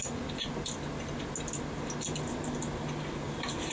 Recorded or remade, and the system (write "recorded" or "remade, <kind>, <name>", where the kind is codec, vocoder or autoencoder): recorded